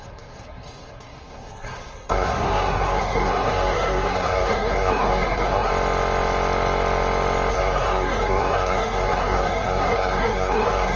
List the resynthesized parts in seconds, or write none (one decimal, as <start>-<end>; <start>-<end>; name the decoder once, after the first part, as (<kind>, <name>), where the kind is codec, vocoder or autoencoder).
0.0-5.7 (codec, SNAC); 7.5-11.0